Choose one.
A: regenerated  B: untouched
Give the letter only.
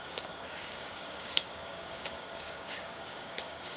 A